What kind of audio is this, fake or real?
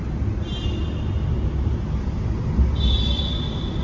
real